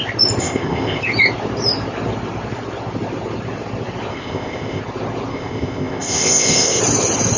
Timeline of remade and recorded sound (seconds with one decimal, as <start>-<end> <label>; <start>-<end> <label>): 0.0-0.4 recorded; 0.4-1.0 remade; 1.0-4.1 recorded; 4.1-4.8 remade; 4.8-5.3 recorded; 5.3-6.8 remade; 6.8-7.4 recorded